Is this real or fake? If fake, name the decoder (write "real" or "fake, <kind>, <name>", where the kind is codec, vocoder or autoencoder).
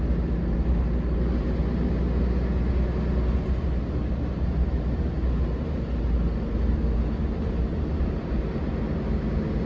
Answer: real